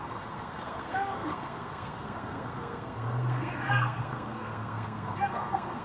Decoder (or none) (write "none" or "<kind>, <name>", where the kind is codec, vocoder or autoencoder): codec, SNAC